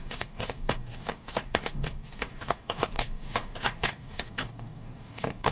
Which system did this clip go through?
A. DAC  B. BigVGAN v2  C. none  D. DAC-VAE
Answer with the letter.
A